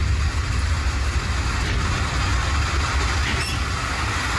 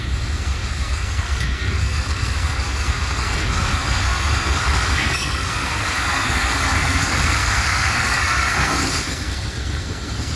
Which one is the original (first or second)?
first